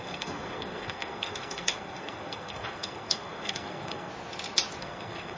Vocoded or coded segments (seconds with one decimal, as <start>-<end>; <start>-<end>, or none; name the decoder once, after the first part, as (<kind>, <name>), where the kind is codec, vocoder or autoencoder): 0.0-4.1 (codec, SNAC); 4.8-5.4